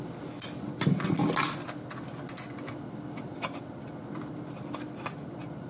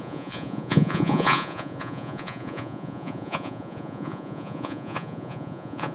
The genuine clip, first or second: first